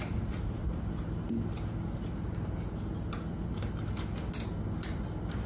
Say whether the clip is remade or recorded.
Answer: recorded